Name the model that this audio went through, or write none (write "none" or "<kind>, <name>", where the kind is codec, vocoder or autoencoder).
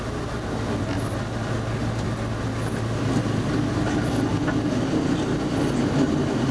none